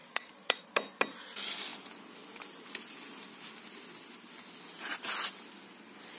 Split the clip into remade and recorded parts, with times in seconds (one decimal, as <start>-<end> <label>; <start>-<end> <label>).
0.0-0.7 remade; 0.7-6.2 recorded